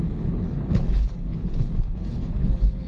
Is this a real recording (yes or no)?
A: no